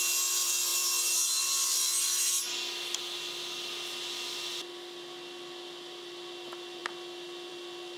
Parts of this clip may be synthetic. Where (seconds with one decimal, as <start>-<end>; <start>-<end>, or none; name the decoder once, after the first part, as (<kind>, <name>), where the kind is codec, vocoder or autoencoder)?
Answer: none